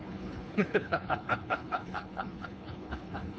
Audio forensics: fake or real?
fake